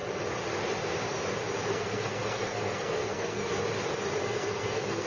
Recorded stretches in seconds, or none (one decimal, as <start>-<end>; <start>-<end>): 0.0-1.7; 3.5-4.2